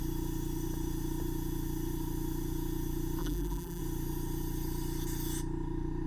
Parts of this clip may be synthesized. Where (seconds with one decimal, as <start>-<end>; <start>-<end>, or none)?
3.2-3.8